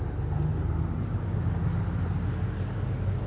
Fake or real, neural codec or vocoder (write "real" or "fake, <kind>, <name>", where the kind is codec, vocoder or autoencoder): real